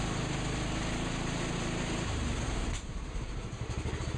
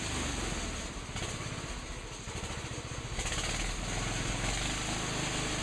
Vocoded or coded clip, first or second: first